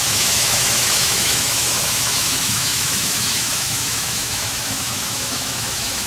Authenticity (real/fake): fake